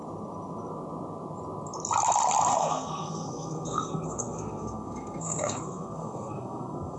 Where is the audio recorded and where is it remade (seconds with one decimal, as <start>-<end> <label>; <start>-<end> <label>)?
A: 0.0-2.5 recorded; 2.5-7.0 remade